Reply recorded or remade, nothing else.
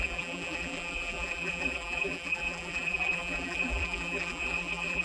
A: remade